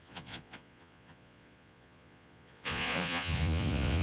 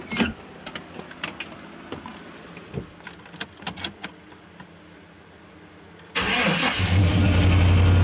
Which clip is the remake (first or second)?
first